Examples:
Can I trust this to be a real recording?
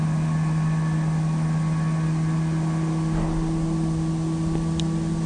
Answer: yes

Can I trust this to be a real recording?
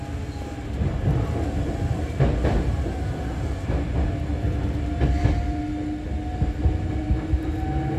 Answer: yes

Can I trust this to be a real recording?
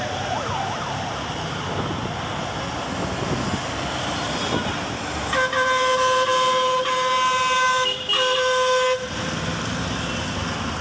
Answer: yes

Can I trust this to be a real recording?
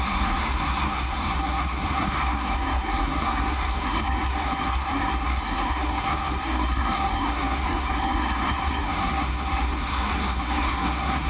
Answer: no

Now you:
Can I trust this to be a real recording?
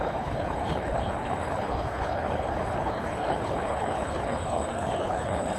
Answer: no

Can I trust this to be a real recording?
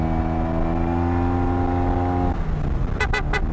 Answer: yes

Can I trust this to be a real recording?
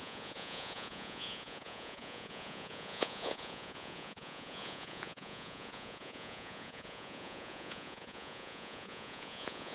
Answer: no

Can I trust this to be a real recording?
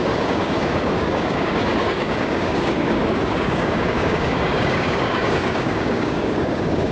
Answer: no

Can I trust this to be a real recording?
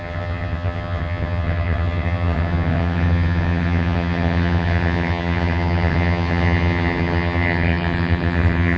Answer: no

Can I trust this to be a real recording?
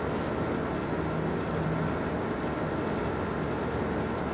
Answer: yes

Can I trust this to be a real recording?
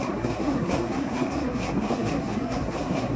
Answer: no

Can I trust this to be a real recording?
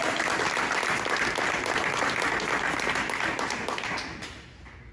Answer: yes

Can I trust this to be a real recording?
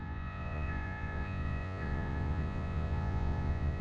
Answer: no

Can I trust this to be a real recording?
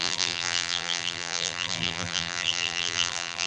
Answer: no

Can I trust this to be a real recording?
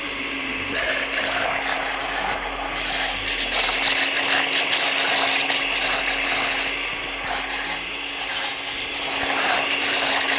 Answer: yes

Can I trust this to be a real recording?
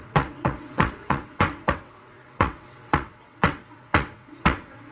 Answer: no